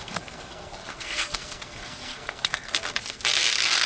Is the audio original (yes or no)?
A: no